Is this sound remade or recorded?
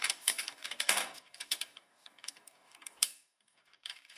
remade